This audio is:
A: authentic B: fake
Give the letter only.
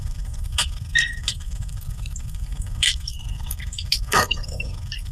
B